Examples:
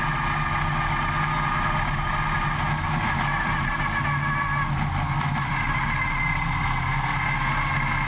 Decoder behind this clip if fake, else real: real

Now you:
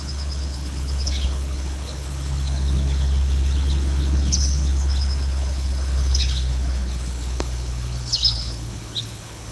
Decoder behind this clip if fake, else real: fake, codec, HILCodec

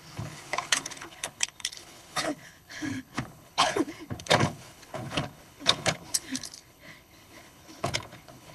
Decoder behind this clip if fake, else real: fake, codec, HILCodec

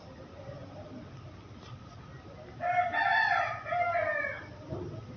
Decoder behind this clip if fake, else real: real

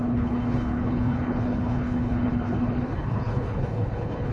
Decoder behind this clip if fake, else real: fake, codec, HILCodec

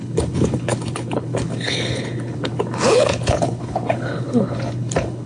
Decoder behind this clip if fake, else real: fake, codec, HILCodec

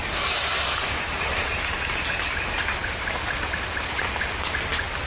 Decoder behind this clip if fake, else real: real